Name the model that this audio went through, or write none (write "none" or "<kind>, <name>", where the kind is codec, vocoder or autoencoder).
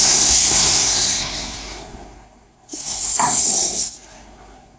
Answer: codec, SNAC